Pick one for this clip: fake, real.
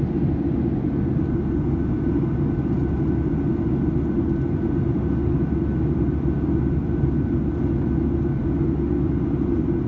real